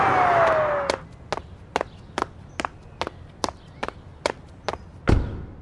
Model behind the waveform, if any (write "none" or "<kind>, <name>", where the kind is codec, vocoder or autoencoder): none